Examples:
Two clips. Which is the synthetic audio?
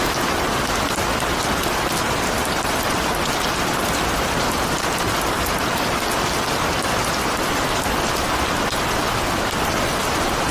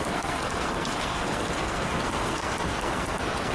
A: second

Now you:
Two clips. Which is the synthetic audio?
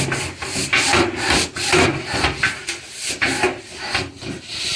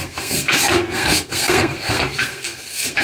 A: second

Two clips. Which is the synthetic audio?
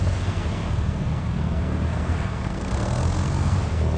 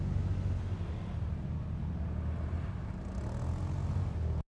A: first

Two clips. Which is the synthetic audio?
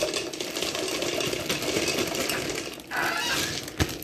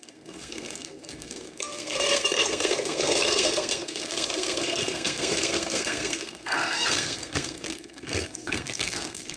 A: second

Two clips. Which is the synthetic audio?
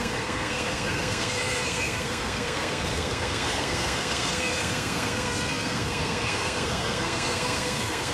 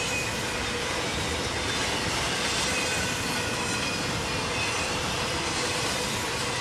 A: first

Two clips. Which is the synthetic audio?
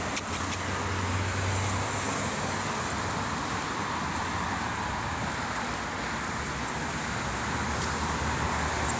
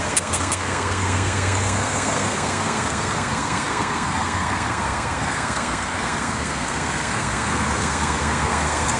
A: second